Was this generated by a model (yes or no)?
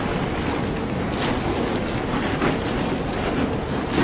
no